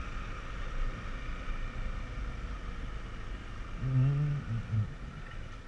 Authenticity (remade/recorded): recorded